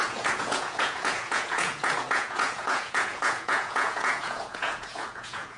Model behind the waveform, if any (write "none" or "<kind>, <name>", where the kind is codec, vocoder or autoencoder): vocoder, Vocos